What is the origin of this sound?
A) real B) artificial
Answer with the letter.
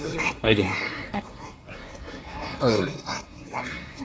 B